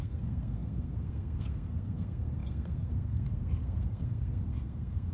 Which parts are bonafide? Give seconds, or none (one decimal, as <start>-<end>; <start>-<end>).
none